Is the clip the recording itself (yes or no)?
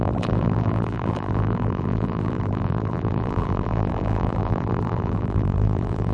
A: no